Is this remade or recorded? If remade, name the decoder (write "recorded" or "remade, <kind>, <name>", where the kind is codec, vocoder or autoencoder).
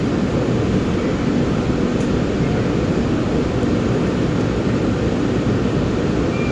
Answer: recorded